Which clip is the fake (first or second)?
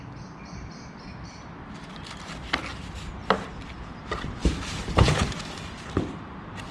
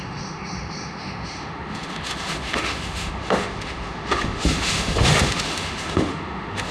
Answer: second